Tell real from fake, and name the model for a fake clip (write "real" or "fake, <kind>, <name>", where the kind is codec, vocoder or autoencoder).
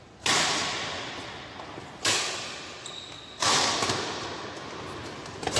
real